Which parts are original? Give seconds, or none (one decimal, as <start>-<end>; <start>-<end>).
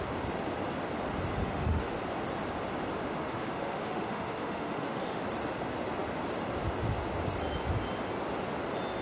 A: 0.0-1.4; 1.9-3.2; 5.2-9.0